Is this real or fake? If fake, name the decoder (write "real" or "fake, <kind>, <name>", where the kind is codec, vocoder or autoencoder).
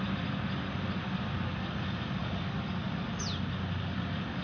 real